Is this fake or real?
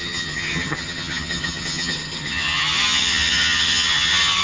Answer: fake